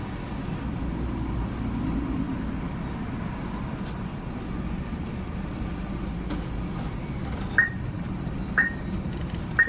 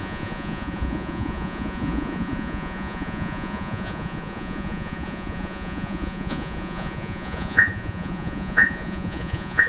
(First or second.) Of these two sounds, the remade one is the second